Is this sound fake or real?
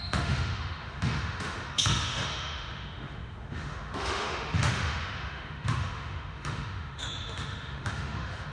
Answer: fake